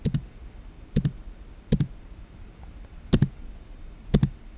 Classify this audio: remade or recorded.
recorded